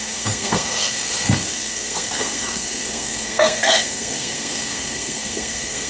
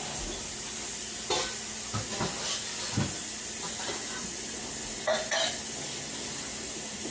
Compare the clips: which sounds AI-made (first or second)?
first